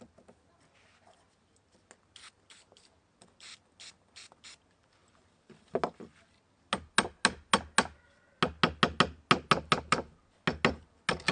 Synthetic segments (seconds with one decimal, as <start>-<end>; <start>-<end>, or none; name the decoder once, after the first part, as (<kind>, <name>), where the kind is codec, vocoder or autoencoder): none